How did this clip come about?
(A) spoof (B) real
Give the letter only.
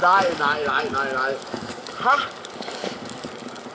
A